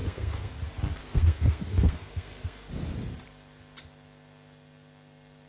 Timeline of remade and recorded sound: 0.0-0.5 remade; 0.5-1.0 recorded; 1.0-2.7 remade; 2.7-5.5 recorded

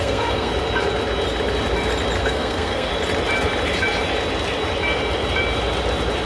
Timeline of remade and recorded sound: 0.0-0.5 remade; 0.5-2.2 recorded; 2.2-2.9 remade; 2.9-6.3 recorded